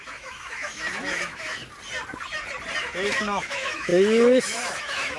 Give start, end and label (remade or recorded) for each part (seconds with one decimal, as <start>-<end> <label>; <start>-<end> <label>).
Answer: 0.0-1.6 remade; 1.6-2.8 recorded; 2.8-5.2 remade